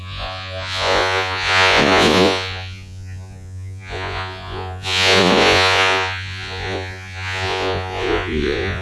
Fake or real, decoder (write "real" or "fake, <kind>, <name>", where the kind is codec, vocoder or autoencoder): fake, vocoder, Vocos